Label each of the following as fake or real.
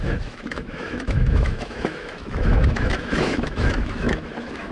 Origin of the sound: fake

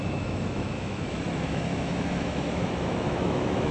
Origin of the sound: fake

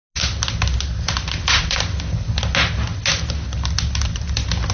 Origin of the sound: real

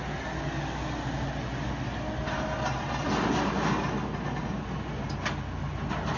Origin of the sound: real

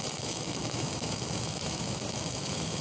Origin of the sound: fake